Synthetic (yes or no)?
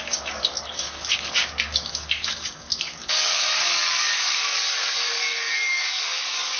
yes